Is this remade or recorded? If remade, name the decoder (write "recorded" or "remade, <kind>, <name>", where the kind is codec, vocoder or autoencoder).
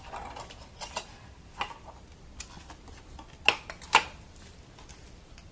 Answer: recorded